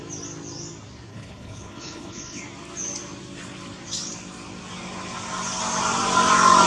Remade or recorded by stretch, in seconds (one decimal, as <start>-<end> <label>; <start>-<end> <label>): 0.0-1.1 recorded; 1.1-2.4 remade; 2.4-6.7 recorded